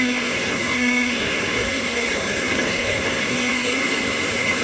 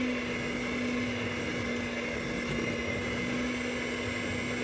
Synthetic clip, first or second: first